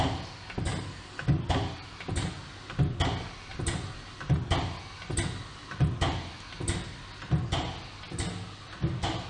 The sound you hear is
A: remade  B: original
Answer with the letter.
B